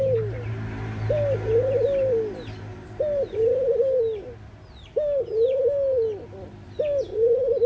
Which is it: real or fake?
real